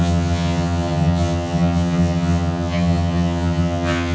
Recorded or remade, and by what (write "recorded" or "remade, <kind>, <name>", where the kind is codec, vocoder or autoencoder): remade, vocoder, HiFi-GAN